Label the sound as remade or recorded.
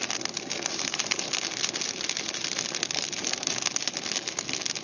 recorded